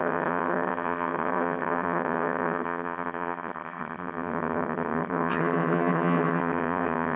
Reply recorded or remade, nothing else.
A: remade